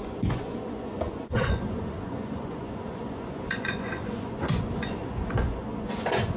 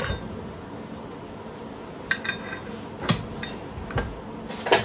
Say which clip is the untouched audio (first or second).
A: second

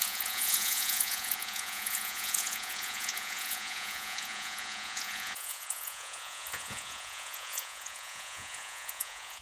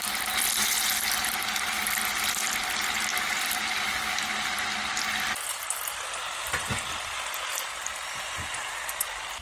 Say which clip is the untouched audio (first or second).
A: second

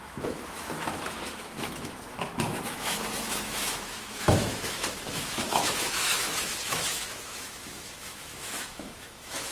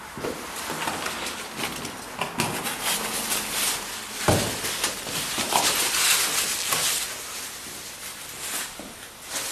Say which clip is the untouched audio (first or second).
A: second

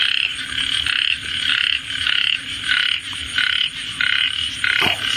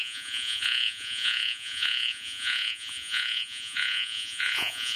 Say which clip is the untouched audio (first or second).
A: first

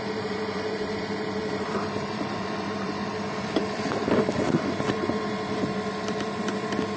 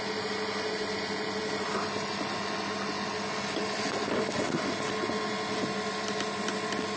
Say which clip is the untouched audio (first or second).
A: second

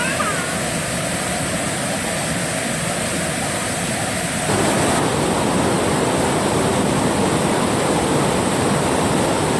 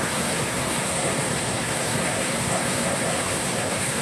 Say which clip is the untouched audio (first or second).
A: first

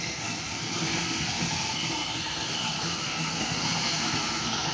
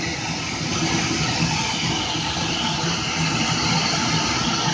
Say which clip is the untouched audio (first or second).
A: second